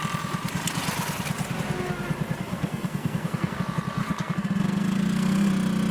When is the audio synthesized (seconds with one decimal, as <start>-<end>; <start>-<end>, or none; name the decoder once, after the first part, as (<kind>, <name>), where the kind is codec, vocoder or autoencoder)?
2.5-3.6 (codec, SNAC); 4.0-5.5